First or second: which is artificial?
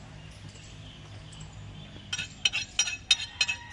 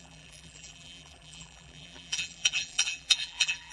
second